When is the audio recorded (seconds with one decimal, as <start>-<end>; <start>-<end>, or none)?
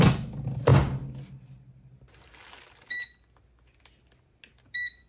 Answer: 0.0-5.1